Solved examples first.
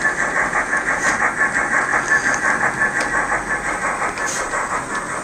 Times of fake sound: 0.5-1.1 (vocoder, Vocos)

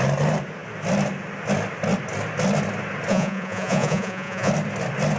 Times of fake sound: 3.1-4.5 (vocoder, Vocos)

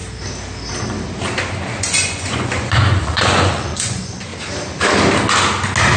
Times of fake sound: 1.8-4.3 (vocoder, Vocos)

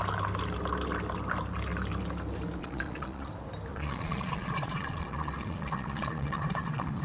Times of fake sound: 2.6-3.3 (vocoder, Vocos); 3.7-7.0

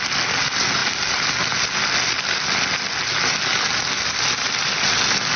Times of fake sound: none